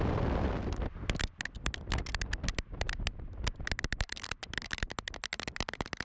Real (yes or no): yes